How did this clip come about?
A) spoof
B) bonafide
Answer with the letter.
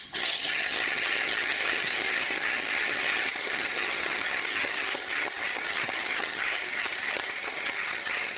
A